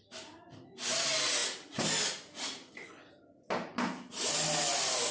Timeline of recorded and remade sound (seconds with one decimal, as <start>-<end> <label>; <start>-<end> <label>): 0.0-5.1 recorded